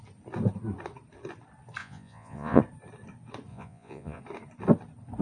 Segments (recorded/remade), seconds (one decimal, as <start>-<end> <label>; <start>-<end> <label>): 0.0-1.8 recorded; 1.8-2.6 remade; 2.6-3.5 recorded; 3.5-4.2 remade; 4.2-5.2 recorded